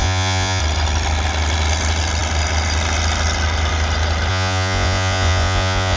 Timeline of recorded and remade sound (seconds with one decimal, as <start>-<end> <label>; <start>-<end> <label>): 0.0-0.6 remade; 0.6-4.3 recorded; 4.3-6.0 remade

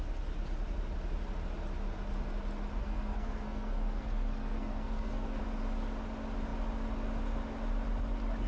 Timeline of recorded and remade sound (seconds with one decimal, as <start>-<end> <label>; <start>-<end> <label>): 0.0-2.8 recorded; 2.8-5.4 remade; 5.4-8.5 recorded

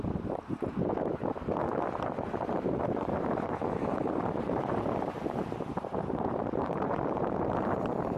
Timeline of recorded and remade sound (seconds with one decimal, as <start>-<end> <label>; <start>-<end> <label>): 0.0-1.2 remade; 1.2-2.0 recorded; 2.0-8.2 remade

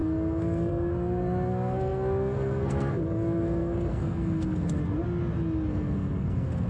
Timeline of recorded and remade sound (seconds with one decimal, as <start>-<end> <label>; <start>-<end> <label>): 0.0-4.8 remade; 4.8-5.7 recorded; 5.7-6.7 remade

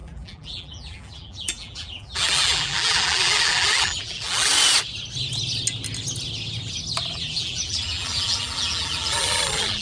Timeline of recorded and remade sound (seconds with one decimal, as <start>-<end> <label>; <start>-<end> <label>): 0.0-4.5 remade; 4.5-7.1 recorded; 7.1-9.8 remade